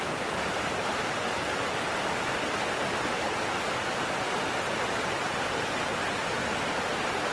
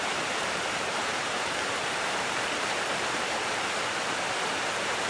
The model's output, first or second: second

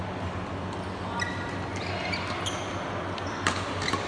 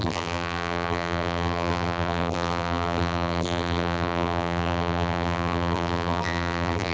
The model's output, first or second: second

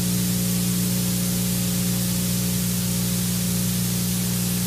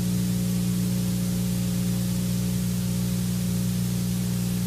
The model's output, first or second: second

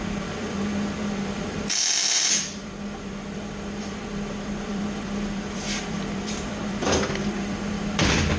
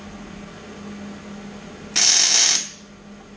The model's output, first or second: first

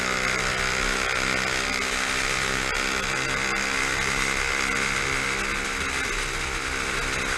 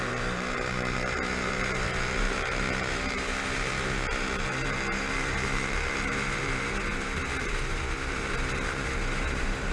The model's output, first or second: second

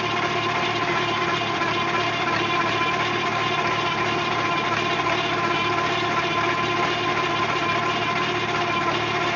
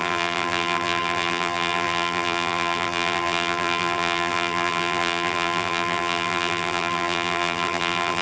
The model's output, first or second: second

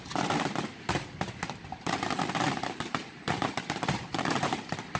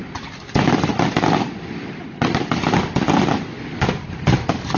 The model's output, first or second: first